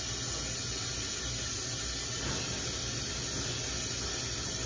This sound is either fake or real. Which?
real